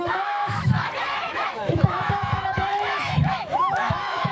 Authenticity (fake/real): fake